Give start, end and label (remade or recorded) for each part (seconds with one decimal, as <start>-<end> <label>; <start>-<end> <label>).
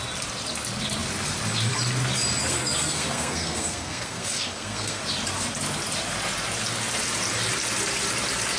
0.0-2.4 recorded; 2.4-5.0 remade; 5.0-8.6 recorded